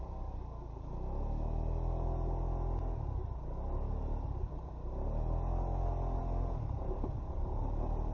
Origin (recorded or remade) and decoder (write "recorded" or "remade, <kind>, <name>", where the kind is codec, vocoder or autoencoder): recorded